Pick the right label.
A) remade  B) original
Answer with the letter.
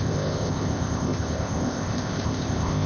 A